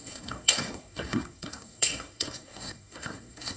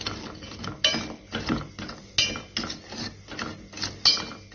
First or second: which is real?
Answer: second